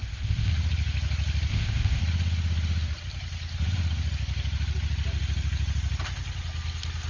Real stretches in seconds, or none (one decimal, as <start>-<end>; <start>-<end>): 0.5-1.5; 2.0-7.1